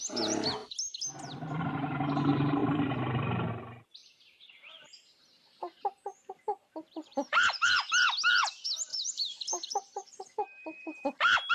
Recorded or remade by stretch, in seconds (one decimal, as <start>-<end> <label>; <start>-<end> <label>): 0.0-4.0 recorded; 4.0-7.9 remade; 7.9-8.9 recorded; 8.9-11.0 remade; 11.0-11.5 recorded